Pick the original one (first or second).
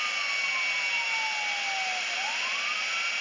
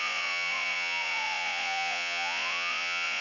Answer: first